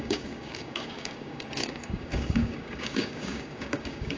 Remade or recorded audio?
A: remade